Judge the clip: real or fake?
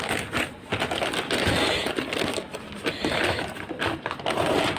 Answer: real